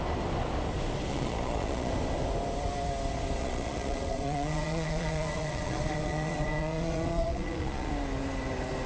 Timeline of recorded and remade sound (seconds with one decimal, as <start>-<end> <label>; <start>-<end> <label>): 0.0-1.1 recorded; 1.1-1.9 remade; 1.9-3.4 recorded; 3.4-7.9 remade; 7.9-8.9 recorded